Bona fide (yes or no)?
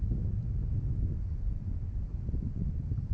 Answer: yes